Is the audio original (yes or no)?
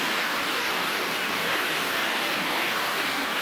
no